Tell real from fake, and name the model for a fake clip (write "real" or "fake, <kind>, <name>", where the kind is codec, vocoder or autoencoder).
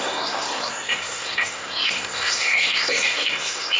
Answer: fake, codec, SNAC